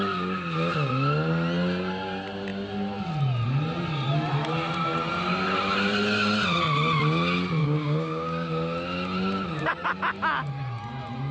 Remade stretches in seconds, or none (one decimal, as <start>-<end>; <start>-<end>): 7.6-8.5